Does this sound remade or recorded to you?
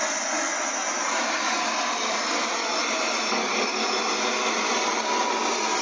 recorded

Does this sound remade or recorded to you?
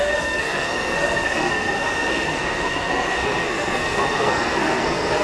remade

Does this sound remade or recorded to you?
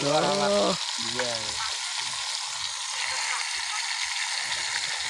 recorded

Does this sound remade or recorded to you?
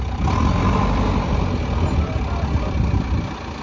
recorded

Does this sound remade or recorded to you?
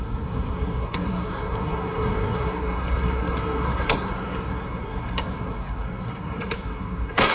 remade